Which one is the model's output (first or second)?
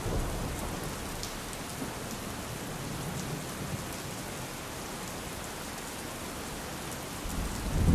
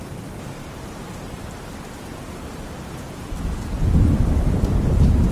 second